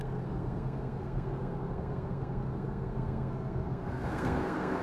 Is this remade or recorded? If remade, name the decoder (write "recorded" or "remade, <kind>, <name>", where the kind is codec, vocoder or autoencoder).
remade, codec, SNAC